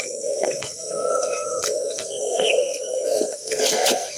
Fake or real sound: fake